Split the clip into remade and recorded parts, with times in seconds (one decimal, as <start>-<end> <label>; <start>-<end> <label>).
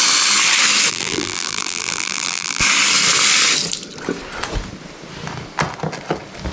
0.0-0.9 recorded; 0.9-2.6 remade; 2.6-6.5 recorded